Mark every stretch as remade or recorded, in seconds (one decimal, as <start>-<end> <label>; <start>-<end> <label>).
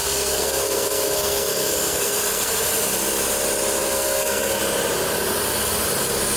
0.0-2.5 remade; 2.5-3.8 recorded; 3.8-4.6 remade; 4.6-6.4 recorded